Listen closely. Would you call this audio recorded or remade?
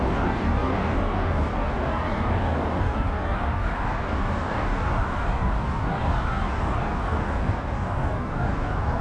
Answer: remade